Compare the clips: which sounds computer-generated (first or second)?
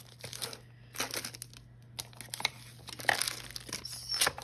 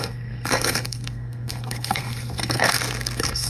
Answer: second